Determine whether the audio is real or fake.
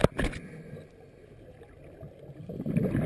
real